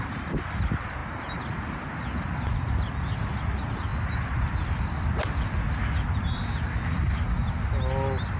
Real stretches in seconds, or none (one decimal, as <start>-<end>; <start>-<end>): 0.0-8.4